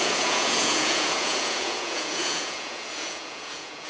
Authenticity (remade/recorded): remade